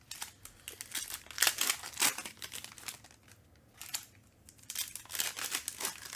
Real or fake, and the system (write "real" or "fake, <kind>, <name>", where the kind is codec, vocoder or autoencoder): real